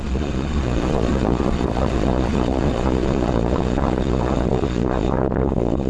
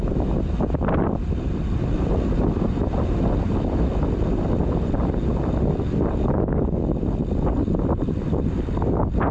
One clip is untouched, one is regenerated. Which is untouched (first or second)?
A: second